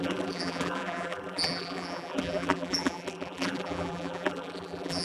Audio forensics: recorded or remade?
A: remade